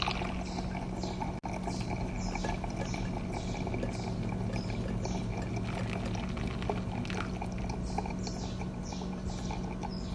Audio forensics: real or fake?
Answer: real